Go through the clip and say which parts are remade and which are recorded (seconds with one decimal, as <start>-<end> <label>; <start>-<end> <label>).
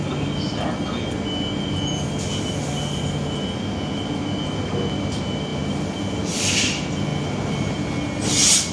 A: 0.0-8.7 recorded